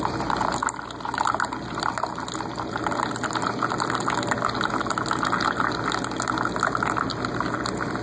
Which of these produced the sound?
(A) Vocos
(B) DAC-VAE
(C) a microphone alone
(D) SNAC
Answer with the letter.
C